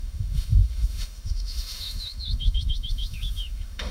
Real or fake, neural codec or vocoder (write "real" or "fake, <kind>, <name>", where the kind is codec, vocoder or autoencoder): fake, autoencoder, DAC-VAE